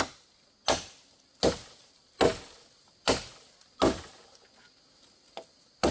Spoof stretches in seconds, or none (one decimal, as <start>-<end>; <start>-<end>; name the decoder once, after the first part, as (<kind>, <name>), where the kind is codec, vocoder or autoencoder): none